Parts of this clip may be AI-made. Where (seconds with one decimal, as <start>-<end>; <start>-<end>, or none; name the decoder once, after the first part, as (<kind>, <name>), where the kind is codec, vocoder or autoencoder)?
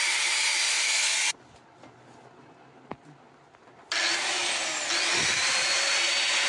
5.4-5.9 (vocoder, BigVGAN v2)